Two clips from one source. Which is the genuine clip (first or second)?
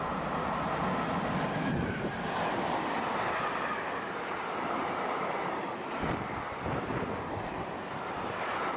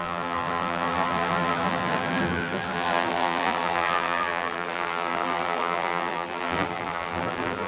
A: first